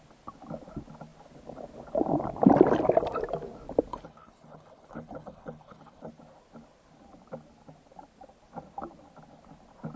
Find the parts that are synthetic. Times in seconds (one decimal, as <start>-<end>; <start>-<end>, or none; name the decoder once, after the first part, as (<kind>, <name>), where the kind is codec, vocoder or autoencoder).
3.9-6.1 (codec, HILCodec)